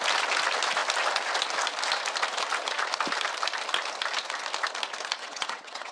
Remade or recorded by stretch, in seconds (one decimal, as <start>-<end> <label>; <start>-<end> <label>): 0.0-5.2 recorded; 5.2-5.9 remade

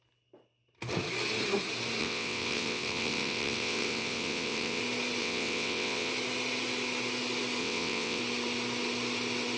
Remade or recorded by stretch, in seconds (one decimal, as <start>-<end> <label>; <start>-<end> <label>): 0.0-2.0 recorded; 2.0-4.8 remade; 4.8-5.2 recorded; 5.2-6.1 remade; 6.1-7.6 recorded; 7.6-8.2 remade; 8.2-9.6 recorded

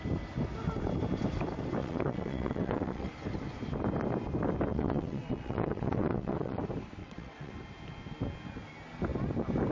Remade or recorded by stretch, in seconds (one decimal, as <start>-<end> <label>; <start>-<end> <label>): 0.0-1.8 recorded; 1.8-3.1 remade; 3.1-4.7 recorded; 4.7-6.6 remade; 6.6-7.0 recorded; 7.0-7.5 remade; 7.5-9.7 recorded